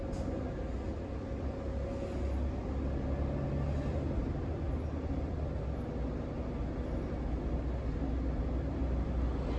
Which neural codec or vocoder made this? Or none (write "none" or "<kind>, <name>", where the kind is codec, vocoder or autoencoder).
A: none